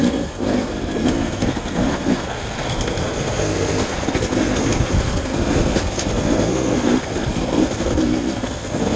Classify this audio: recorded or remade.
remade